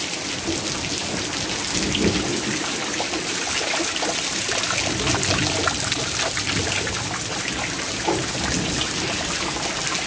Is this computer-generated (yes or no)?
no